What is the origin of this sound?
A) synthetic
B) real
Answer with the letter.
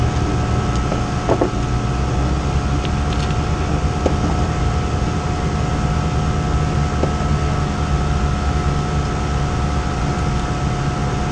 B